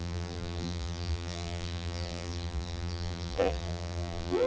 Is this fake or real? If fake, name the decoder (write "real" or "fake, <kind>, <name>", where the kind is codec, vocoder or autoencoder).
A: fake, vocoder, BigVGAN v2